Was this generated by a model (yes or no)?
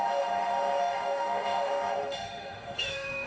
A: yes